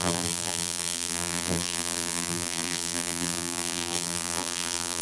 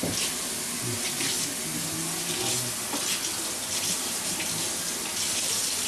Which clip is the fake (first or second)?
first